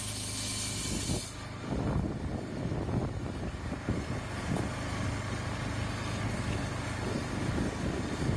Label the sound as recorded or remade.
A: recorded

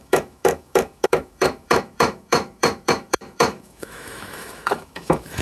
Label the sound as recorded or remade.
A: remade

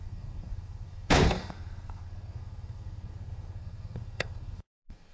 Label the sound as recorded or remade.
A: remade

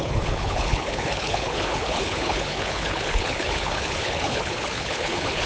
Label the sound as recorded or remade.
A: remade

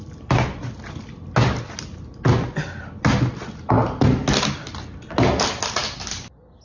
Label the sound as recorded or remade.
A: recorded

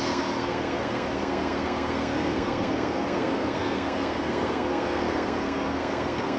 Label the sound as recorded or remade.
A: remade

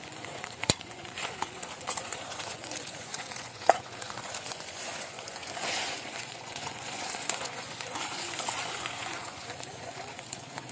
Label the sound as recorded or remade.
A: remade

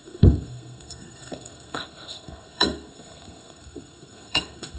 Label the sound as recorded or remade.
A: remade